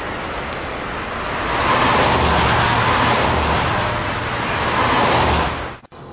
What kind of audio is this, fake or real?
real